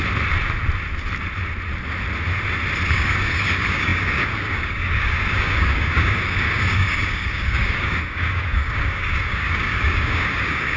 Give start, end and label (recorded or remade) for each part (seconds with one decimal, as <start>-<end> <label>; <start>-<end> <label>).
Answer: 0.0-2.9 recorded; 2.9-10.8 remade